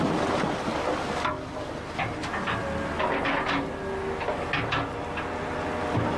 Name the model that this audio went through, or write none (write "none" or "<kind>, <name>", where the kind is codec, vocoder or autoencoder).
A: none